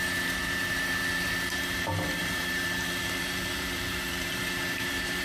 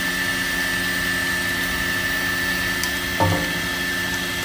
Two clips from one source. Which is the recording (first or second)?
second